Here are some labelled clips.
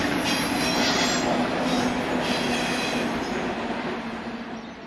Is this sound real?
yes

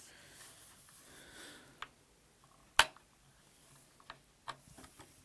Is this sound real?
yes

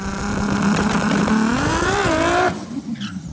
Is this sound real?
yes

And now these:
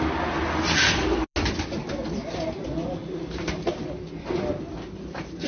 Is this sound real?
yes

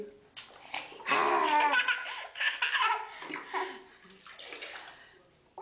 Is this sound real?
yes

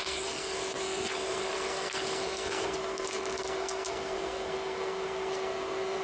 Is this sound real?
no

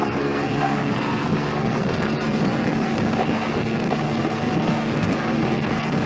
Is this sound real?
no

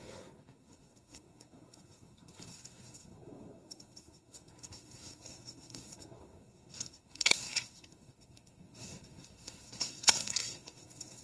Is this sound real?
no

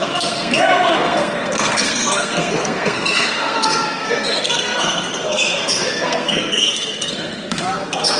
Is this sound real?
no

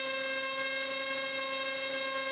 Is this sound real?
yes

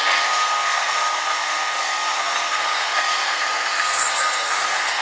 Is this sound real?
no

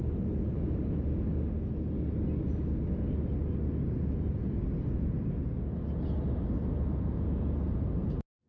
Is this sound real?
yes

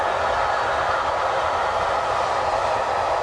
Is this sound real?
yes